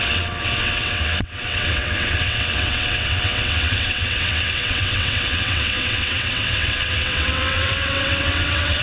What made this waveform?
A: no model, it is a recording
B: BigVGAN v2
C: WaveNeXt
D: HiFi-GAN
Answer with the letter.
C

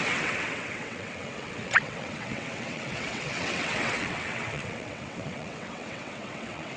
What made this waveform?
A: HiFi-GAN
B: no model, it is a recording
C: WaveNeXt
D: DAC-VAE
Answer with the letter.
C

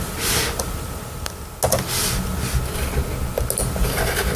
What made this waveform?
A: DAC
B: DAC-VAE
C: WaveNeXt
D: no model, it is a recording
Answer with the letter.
D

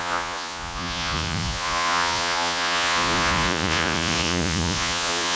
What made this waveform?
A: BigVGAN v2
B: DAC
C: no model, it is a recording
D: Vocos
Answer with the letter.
D